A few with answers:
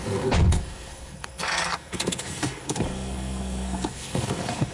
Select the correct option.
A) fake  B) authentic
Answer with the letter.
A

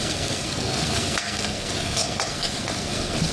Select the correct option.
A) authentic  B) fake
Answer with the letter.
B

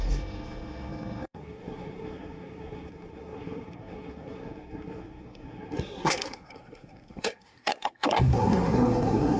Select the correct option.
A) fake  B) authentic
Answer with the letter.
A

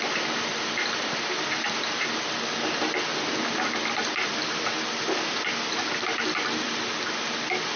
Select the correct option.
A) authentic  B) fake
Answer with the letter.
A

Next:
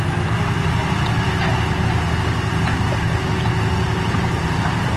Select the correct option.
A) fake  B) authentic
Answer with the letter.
B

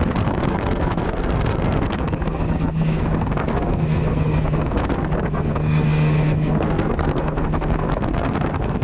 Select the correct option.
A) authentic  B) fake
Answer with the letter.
B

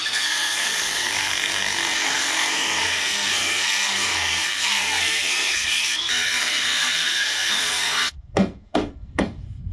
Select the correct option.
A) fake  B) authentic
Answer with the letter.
A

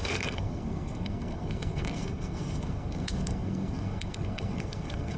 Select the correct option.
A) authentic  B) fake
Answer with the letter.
B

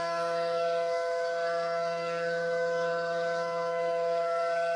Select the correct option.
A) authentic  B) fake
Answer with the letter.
B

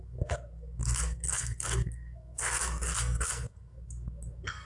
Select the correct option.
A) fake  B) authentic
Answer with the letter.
A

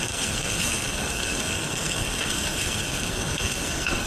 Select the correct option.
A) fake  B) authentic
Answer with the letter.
A